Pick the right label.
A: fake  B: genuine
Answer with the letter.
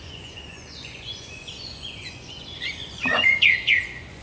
A